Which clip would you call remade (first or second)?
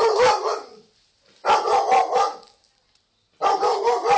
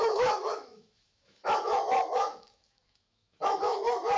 second